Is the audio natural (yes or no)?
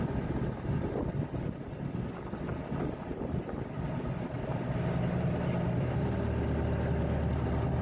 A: yes